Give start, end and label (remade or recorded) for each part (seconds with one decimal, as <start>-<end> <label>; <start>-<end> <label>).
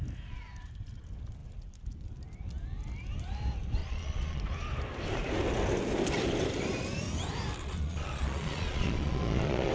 0.0-3.8 recorded; 3.8-4.4 remade; 4.4-7.6 recorded; 7.6-9.7 remade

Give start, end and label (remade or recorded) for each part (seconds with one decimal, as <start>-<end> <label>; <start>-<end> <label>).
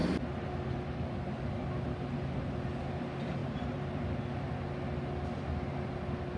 0.0-1.4 remade; 1.4-3.4 recorded; 3.4-4.0 remade; 4.0-6.4 recorded